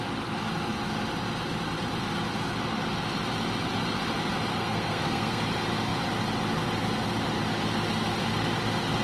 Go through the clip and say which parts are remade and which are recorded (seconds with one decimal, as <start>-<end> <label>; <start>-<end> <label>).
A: 0.0-4.5 recorded; 4.5-5.4 remade; 5.4-9.0 recorded

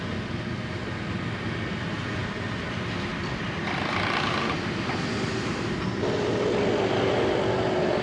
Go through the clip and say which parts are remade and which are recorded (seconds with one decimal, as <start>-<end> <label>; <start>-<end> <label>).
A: 0.0-8.0 recorded

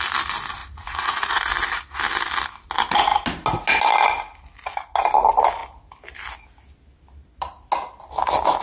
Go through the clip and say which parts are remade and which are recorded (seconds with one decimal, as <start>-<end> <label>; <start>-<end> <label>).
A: 0.0-0.6 recorded; 0.6-1.4 remade; 1.4-8.6 recorded

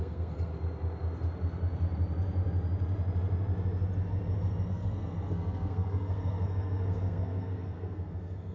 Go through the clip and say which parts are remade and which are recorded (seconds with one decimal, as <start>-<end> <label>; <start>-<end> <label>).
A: 0.0-0.5 remade; 0.5-4.7 recorded; 4.7-8.5 remade

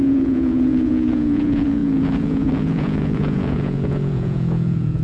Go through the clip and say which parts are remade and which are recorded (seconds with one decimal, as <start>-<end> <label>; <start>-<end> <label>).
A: 0.0-5.0 remade

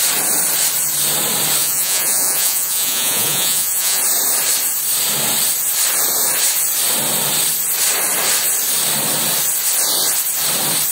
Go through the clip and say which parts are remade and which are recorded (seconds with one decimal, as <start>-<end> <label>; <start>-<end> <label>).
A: 0.0-1.6 recorded; 1.6-4.0 remade; 4.0-10.9 recorded

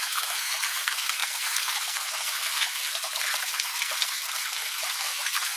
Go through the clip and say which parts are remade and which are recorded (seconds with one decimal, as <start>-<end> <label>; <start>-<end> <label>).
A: 0.0-5.6 remade